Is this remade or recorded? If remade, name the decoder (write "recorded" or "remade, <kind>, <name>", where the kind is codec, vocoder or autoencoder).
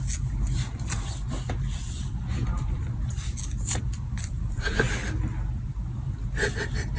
recorded